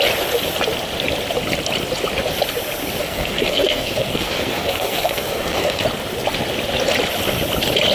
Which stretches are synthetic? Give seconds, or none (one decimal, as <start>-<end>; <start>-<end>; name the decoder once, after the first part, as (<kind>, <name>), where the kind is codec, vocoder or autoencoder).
3.0-5.8 (codec, SNAC)